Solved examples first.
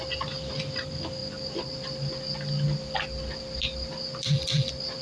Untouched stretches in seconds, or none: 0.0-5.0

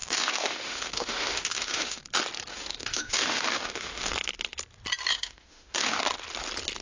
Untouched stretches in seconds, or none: 2.0-2.5; 4.1-5.1; 6.0-6.8

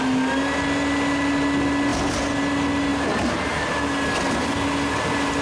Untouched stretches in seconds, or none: 0.0-5.4

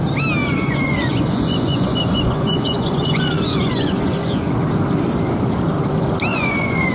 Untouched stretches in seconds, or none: 0.0-0.4; 4.5-6.3

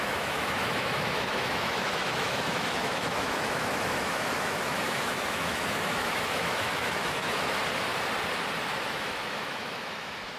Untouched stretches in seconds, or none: 7.6-8.8